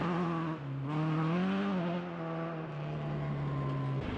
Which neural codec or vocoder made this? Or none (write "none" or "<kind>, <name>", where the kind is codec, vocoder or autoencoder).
none